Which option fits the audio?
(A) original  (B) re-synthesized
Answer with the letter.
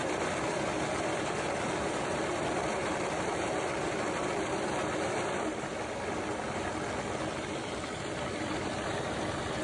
B